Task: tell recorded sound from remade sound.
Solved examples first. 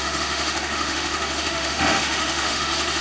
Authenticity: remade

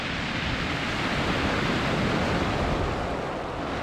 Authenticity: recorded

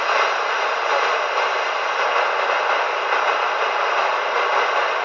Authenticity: recorded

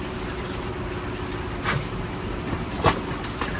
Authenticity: recorded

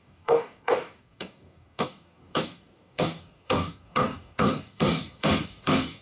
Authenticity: remade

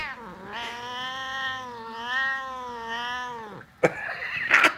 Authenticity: recorded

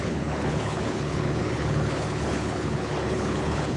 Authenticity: remade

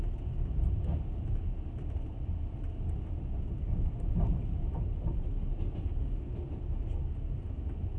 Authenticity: recorded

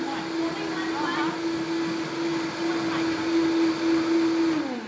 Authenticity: recorded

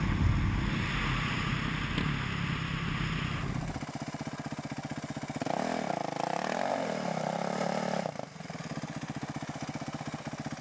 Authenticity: recorded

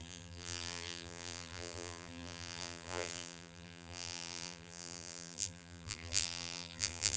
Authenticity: remade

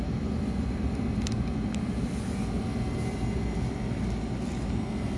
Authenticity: recorded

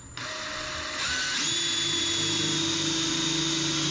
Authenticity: recorded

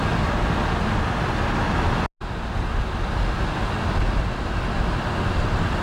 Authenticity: recorded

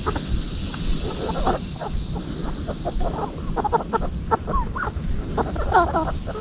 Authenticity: recorded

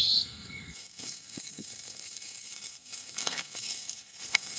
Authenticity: remade